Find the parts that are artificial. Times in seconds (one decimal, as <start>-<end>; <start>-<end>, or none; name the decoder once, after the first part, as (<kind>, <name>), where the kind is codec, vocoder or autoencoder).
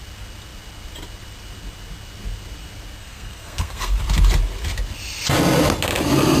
3.0-4.0 (codec, SNAC)